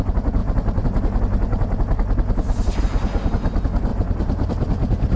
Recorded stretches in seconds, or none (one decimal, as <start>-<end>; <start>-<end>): 0.0-0.4; 2.8-3.9